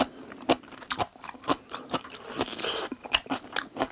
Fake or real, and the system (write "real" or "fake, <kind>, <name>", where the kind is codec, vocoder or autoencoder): real